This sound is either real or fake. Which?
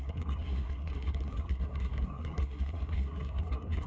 fake